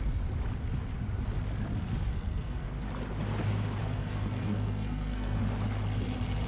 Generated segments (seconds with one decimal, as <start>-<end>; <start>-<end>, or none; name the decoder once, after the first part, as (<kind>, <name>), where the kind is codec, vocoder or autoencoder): 2.1-2.7 (codec, SNAC); 3.8-5.4